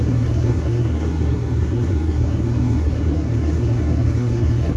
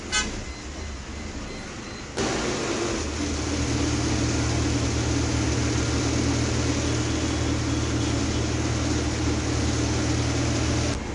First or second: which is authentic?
second